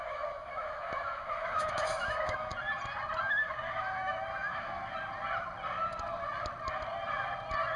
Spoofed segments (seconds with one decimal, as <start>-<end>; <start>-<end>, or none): 0.0-2.5; 3.2-4.8